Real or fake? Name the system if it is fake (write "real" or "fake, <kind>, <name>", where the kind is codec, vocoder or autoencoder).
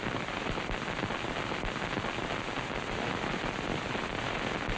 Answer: real